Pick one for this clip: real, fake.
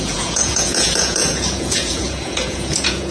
fake